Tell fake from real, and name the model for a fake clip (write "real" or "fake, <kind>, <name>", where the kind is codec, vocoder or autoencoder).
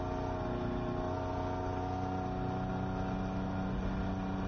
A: real